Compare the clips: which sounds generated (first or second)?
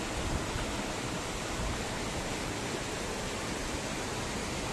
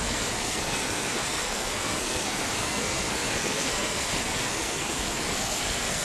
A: second